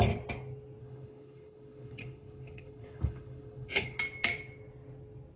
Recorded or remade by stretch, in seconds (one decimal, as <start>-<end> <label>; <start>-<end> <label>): 0.0-0.8 recorded; 0.8-4.0 remade; 4.0-5.4 recorded

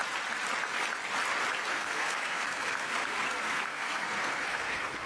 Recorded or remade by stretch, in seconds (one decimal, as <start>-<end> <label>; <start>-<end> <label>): 0.0-1.7 recorded; 1.7-5.1 remade